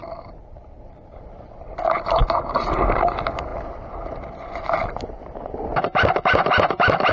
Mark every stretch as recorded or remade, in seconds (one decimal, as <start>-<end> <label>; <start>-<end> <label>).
0.0-7.1 recorded

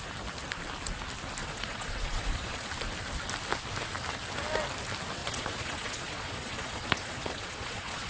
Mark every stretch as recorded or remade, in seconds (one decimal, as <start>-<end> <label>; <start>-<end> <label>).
0.0-1.4 recorded; 1.4-2.7 remade; 2.7-5.2 recorded; 5.2-8.1 remade

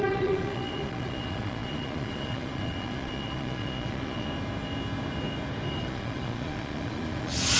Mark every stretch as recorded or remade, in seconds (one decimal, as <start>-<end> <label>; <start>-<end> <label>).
0.0-4.3 remade; 4.3-5.7 recorded; 5.7-7.6 remade

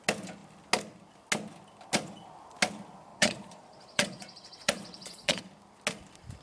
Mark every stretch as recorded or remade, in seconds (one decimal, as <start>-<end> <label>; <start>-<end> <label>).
0.0-3.1 recorded; 3.1-5.4 remade; 5.4-6.4 recorded

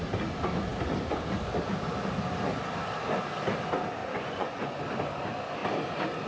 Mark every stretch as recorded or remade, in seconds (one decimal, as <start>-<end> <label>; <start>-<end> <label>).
0.0-4.0 recorded; 4.0-4.8 remade; 4.8-6.3 recorded